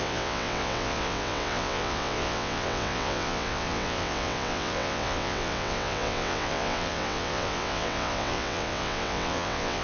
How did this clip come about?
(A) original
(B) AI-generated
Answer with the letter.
B